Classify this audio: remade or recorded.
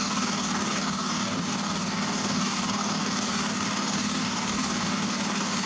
remade